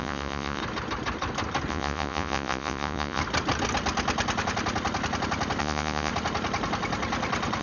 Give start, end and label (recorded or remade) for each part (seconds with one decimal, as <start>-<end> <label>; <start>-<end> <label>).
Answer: 0.0-0.6 remade; 0.6-1.7 recorded; 1.7-3.2 remade; 3.2-5.6 recorded; 5.6-6.1 remade; 6.1-7.6 recorded